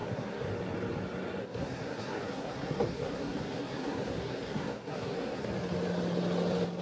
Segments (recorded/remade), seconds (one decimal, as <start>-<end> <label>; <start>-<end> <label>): 0.0-0.5 remade; 0.5-1.4 recorded; 1.4-5.5 remade; 5.5-6.8 recorded